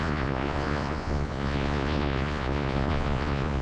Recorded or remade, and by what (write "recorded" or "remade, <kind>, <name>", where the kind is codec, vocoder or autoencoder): remade, vocoder, Vocos